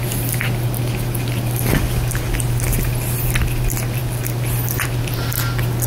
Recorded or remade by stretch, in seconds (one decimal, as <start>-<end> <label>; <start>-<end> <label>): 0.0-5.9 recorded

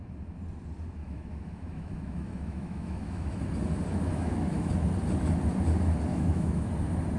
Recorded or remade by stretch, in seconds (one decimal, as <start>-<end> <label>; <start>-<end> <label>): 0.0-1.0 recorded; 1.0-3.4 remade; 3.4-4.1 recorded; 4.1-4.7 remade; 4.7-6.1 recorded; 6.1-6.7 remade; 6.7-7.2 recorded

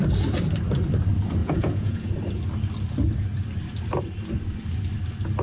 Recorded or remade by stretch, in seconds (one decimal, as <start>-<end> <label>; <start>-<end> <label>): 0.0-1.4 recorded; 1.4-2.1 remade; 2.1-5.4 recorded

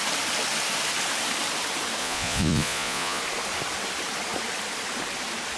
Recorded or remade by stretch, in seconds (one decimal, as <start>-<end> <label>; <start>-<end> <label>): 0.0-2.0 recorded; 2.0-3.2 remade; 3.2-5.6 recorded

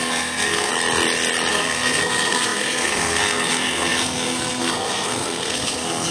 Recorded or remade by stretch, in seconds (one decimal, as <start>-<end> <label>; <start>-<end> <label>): 0.0-0.7 remade; 0.7-1.5 recorded; 1.5-6.1 remade